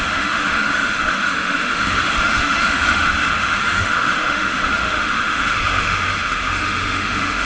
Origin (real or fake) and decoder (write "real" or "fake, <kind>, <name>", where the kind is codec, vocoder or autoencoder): fake, autoencoder, DAC-VAE